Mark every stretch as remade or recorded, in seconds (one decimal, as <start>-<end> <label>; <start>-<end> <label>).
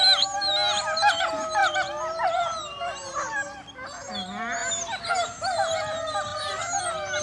0.0-7.2 recorded